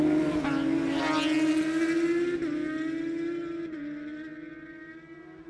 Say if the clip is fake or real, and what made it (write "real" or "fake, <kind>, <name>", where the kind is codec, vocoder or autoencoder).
real